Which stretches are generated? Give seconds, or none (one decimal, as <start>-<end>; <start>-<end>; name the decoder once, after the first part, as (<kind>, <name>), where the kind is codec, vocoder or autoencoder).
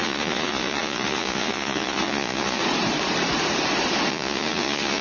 0.0-2.6 (vocoder, Vocos); 4.1-5.0